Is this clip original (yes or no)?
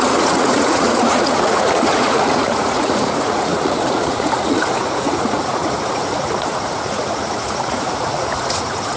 no